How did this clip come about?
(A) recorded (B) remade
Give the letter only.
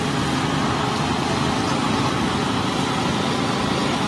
A